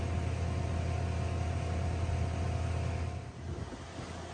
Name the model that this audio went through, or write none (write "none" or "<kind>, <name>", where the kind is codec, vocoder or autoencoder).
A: none